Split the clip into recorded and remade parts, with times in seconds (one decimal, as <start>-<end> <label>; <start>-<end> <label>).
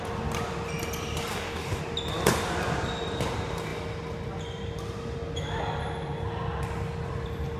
0.0-1.3 recorded; 1.3-1.8 remade; 1.8-7.6 recorded